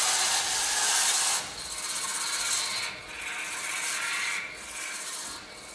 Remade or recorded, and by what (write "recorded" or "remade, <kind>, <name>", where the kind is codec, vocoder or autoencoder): recorded